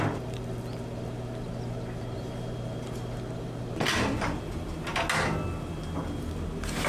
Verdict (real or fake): real